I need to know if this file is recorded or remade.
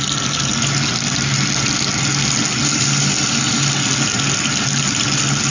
recorded